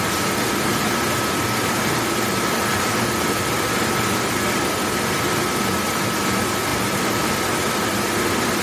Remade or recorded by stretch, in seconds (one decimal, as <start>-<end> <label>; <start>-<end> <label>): 0.0-1.6 recorded; 1.6-2.7 remade; 2.7-6.7 recorded; 6.7-7.3 remade; 7.3-8.6 recorded